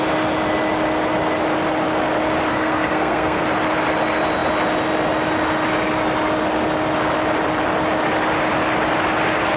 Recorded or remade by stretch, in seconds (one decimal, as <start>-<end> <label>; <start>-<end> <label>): 0.0-2.5 recorded; 2.5-3.4 remade; 3.4-9.6 recorded